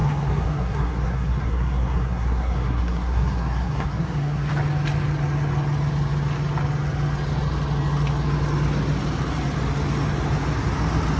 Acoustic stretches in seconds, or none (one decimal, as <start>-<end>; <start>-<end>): 4.5-11.2